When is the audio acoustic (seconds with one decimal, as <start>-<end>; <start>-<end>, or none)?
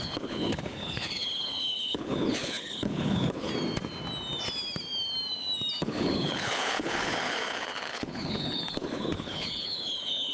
3.5-5.8